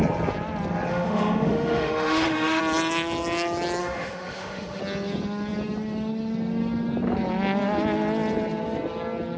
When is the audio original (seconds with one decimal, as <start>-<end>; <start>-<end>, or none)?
0.0-0.9; 2.6-3.8; 4.8-9.4